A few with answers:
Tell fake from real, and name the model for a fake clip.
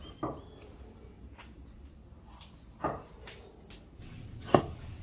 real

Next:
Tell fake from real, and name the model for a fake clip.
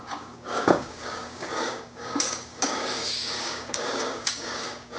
fake, codec, DAC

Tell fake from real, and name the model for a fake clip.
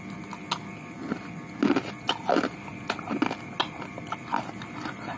real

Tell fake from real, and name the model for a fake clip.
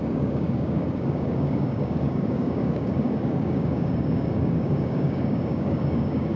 fake, codec, DAC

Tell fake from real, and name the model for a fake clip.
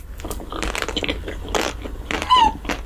real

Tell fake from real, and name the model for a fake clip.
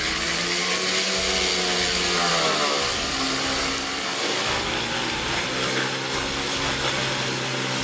real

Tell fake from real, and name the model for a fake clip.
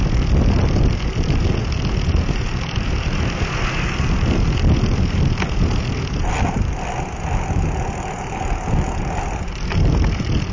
real